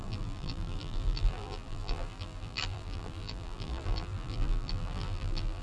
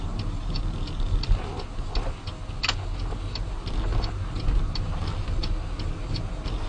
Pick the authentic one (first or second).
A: second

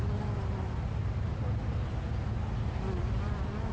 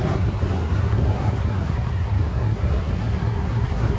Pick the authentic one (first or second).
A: first